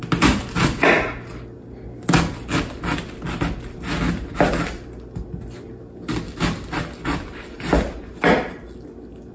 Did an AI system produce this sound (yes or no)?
no